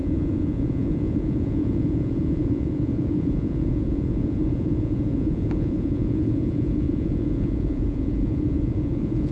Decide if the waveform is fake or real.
fake